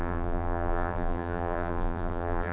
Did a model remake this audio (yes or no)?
yes